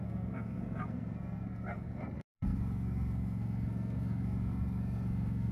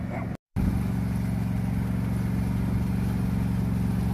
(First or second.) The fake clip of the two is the first